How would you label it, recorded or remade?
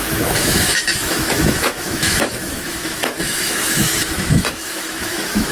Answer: remade